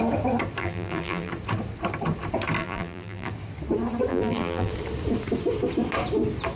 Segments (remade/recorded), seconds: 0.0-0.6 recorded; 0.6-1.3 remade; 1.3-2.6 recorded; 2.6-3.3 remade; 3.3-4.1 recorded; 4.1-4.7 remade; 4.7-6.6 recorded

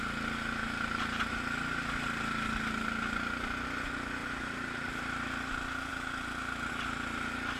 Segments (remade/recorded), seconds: 0.0-4.2 recorded; 4.2-5.0 remade; 5.0-7.6 recorded